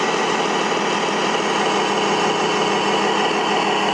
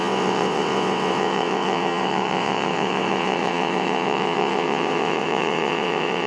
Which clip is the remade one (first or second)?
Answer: second